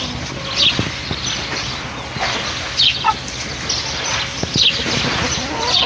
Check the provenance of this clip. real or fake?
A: real